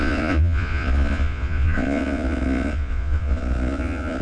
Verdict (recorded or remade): remade